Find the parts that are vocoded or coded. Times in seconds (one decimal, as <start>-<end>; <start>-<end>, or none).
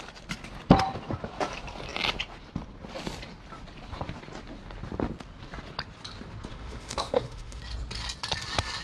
6.5-7.6